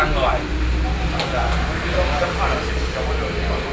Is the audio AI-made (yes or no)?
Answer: no